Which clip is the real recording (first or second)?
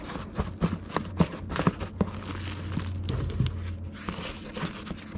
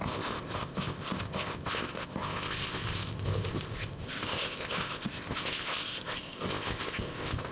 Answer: first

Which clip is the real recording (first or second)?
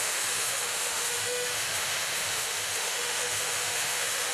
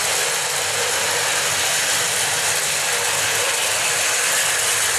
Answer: second